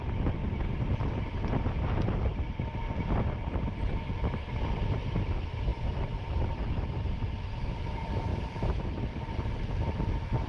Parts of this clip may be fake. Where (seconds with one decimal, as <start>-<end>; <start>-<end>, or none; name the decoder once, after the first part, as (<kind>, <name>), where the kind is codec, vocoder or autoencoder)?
0.0-0.4 (vocoder, BigVGAN v2); 0.9-10.5